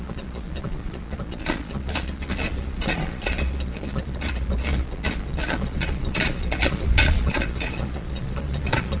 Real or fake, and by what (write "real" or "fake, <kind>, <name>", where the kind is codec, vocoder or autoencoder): fake, vocoder, Vocos